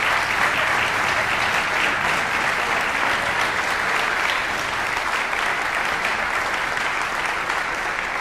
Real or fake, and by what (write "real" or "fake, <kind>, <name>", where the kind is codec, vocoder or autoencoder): real